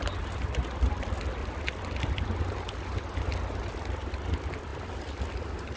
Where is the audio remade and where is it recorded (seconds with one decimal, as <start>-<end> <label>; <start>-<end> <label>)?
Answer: 0.0-1.4 recorded; 1.4-3.9 remade; 3.9-5.8 recorded